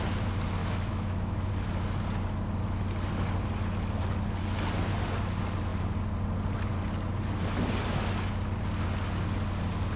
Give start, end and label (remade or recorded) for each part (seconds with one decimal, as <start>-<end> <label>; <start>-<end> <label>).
0.0-0.6 recorded; 0.6-1.5 remade; 1.5-10.0 recorded